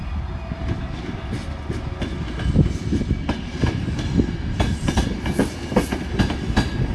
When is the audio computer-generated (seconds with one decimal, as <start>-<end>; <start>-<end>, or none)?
none